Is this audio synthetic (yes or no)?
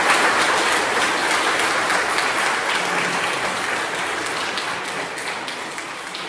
no